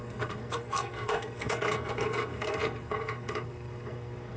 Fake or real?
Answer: fake